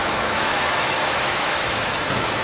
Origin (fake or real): fake